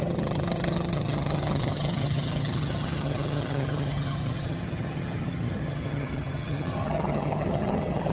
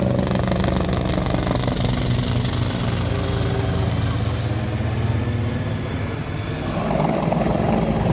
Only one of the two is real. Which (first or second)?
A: second